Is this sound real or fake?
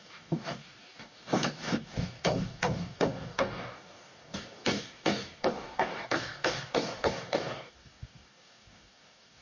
fake